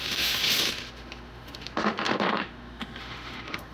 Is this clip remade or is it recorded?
remade